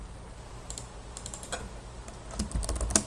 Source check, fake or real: real